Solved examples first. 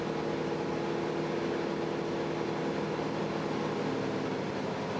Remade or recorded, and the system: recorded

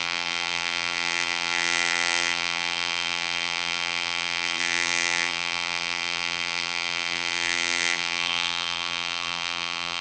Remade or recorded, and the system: remade, vocoder, BigVGAN v2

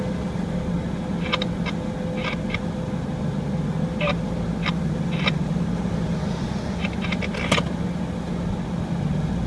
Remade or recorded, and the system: recorded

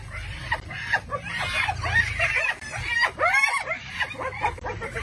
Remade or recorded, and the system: remade, vocoder, BigVGAN v2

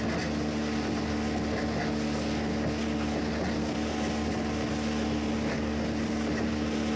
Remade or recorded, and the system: recorded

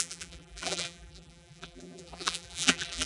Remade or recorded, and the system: remade, vocoder, BigVGAN v2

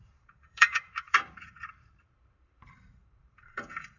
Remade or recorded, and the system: remade, vocoder, BigVGAN v2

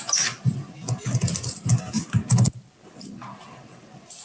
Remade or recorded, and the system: recorded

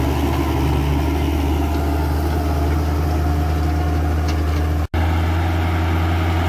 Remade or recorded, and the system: recorded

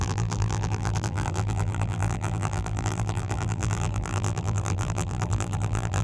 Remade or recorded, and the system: remade, vocoder, BigVGAN v2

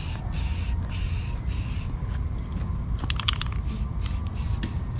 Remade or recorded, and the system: recorded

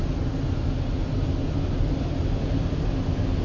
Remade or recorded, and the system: recorded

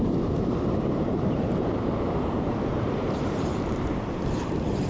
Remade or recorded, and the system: remade, vocoder, BigVGAN v2